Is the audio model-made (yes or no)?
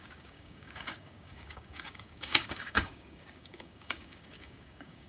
yes